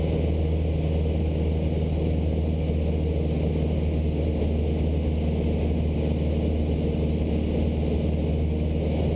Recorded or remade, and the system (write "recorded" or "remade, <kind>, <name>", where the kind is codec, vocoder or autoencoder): recorded